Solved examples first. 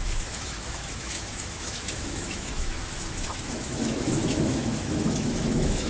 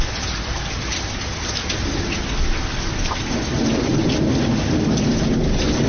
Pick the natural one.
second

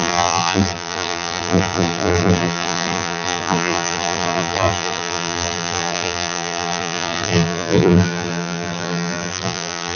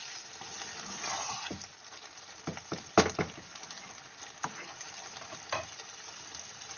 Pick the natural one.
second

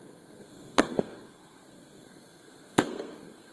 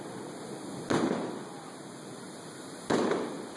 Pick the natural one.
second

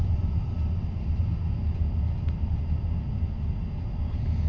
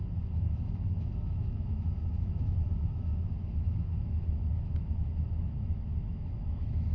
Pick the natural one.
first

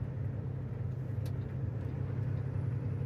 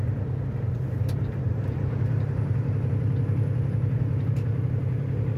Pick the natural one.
first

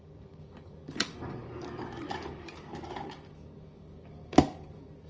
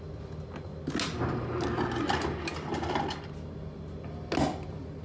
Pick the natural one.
second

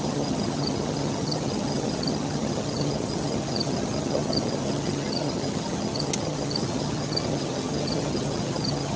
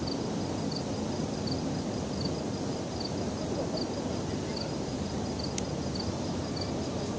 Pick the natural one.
second